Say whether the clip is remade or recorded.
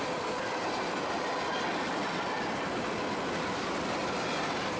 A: recorded